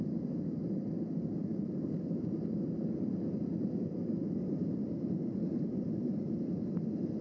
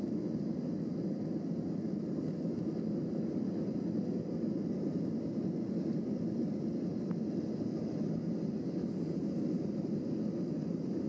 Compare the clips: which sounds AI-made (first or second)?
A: first